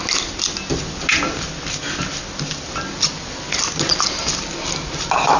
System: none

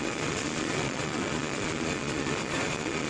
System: vocoder, Vocos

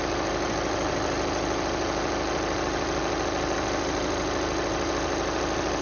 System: none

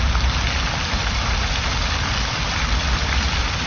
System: none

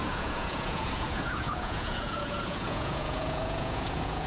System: vocoder, Vocos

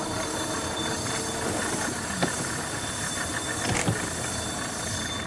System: none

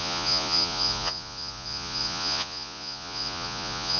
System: vocoder, Vocos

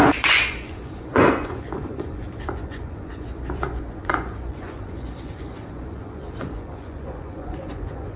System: vocoder, Vocos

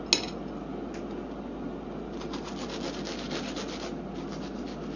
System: none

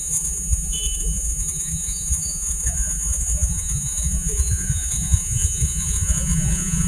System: vocoder, Vocos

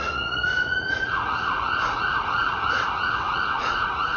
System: vocoder, Vocos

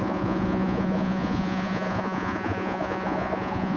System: vocoder, Vocos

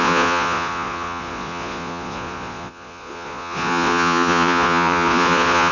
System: vocoder, Vocos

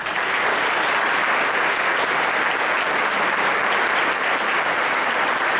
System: none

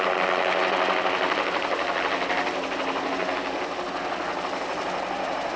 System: none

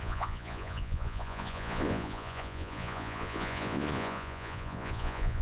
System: vocoder, Vocos